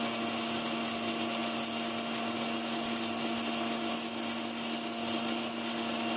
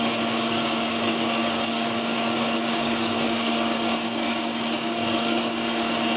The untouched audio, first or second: first